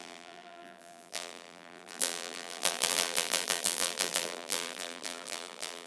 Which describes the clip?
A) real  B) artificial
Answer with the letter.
B